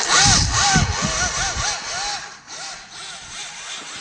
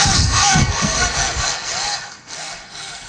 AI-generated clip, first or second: second